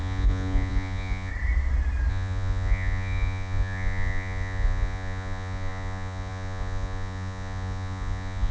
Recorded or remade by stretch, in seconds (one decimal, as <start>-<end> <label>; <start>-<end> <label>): 0.0-1.3 remade; 1.3-2.1 recorded; 2.1-8.5 remade